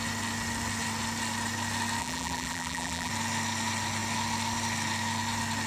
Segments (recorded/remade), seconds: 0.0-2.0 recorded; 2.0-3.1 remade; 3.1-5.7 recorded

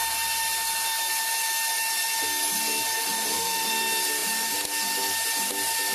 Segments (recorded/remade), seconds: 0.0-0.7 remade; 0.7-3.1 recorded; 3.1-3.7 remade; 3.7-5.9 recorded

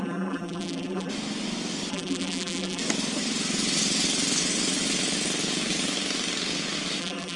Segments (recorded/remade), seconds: 0.0-1.1 remade; 1.1-1.9 recorded; 1.9-2.8 remade; 2.8-7.0 recorded; 7.0-7.4 remade